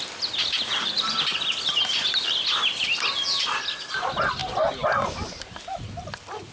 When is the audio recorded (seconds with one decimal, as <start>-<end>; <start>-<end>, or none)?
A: 0.0-6.5